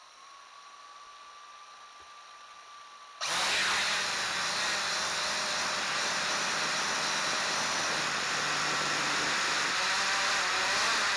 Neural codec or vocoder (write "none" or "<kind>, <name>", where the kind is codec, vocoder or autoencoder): none